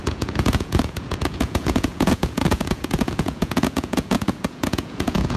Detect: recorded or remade remade